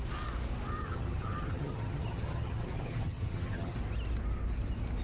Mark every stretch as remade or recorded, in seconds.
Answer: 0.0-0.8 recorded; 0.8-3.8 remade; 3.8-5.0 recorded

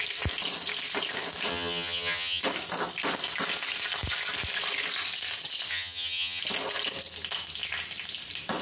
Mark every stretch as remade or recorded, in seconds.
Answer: 0.0-1.5 recorded; 1.5-2.4 remade; 2.4-5.7 recorded; 5.7-6.4 remade; 6.4-8.6 recorded

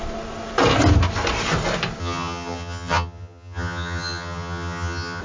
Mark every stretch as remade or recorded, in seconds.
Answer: 0.0-2.0 recorded; 2.0-5.2 remade

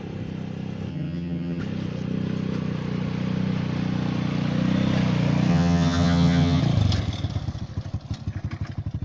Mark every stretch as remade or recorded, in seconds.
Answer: 0.0-0.9 recorded; 0.9-1.6 remade; 1.6-5.5 recorded; 5.5-6.6 remade; 6.6-9.0 recorded

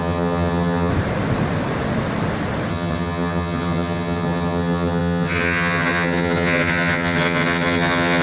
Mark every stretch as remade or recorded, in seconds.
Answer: 0.0-0.9 remade; 0.9-2.7 recorded; 2.7-8.2 remade

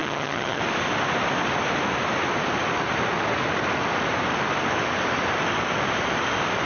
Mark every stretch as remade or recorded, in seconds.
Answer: 0.0-0.6 remade; 0.6-6.7 recorded

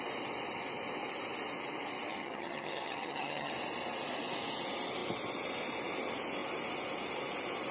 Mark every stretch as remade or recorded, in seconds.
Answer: 0.0-2.1 recorded; 2.1-3.5 remade; 3.5-7.7 recorded